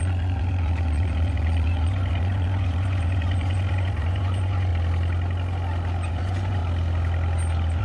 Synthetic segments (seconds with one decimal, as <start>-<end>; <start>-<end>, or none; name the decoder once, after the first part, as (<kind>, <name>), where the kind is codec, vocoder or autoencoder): 0.0-4.7 (vocoder, Vocos); 6.1-6.6